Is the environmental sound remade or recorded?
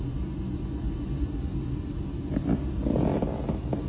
recorded